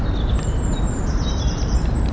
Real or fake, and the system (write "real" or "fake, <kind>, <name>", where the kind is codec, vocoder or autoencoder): fake, vocoder, BigVGAN v2